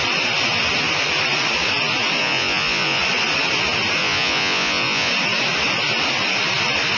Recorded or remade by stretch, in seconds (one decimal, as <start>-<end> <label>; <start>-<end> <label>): 0.0-2.2 recorded; 2.2-3.0 remade; 3.0-4.0 recorded; 4.0-5.1 remade; 5.1-7.0 recorded